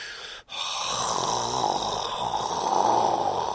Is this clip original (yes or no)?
yes